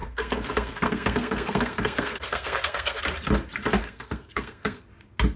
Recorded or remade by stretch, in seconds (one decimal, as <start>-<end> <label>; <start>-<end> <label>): 0.0-3.0 remade; 3.0-3.8 recorded; 3.8-4.8 remade; 4.8-5.4 recorded